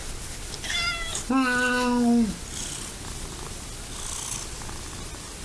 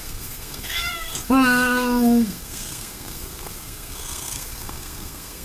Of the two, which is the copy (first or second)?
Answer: second